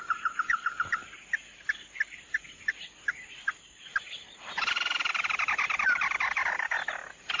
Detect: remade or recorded recorded